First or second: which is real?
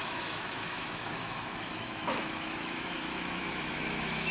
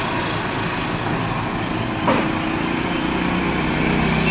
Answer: second